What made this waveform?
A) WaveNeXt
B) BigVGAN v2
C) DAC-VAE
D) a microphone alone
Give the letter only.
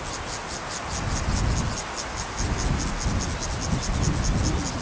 D